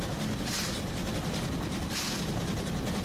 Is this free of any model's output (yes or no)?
yes